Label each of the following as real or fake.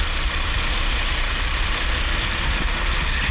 fake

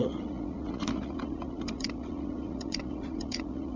fake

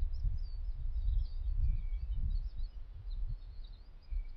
fake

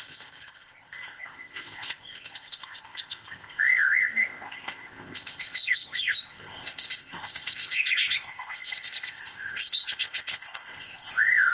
fake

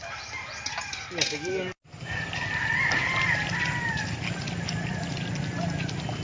real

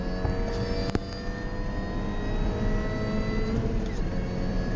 real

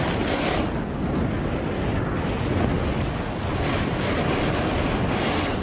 real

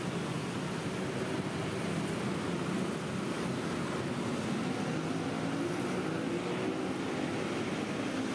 real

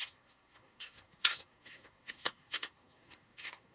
fake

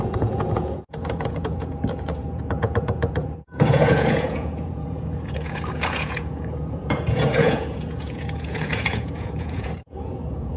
fake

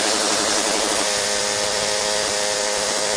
real